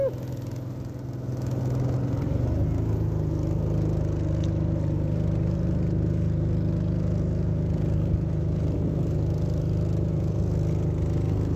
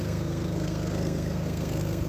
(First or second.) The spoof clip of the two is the second